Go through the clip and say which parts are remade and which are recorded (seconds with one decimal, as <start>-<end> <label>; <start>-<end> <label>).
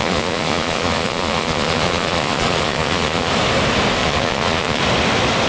0.0-3.3 remade; 3.3-4.0 recorded; 4.0-4.8 remade; 4.8-5.5 recorded